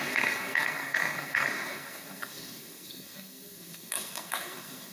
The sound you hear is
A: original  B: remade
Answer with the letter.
B